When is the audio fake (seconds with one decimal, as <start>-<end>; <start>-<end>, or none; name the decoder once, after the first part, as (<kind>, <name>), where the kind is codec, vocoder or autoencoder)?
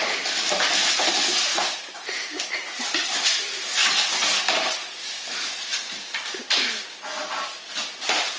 0.0-3.8 (vocoder, BigVGAN v2); 4.7-8.4